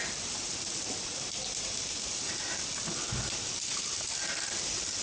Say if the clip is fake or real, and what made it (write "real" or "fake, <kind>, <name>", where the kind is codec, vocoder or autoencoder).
real